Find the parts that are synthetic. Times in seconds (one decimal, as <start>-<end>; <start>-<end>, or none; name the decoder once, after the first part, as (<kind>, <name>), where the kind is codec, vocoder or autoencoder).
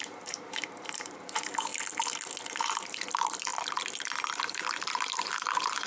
0.0-1.7 (vocoder, BigVGAN v2); 2.6-3.5; 4.5-5.9